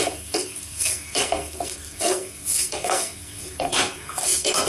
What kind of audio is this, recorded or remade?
remade